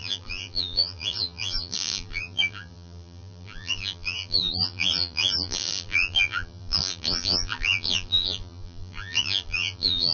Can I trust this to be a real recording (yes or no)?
no